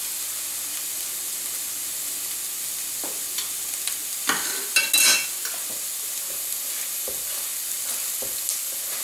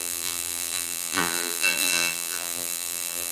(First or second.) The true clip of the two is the first